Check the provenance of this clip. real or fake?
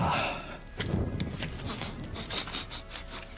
real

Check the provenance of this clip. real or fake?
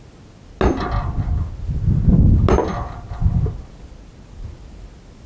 real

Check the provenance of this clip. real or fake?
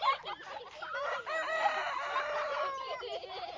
real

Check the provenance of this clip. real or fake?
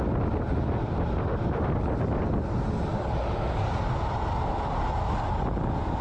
real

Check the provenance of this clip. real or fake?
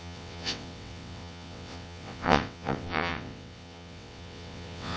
fake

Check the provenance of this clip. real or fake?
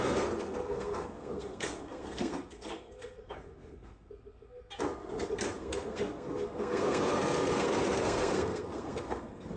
fake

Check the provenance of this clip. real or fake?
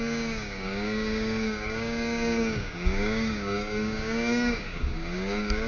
fake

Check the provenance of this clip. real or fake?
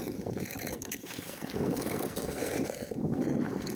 fake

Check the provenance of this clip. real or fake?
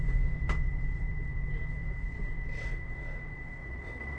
fake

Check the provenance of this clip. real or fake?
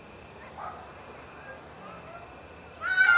real